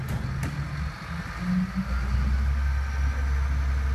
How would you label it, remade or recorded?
recorded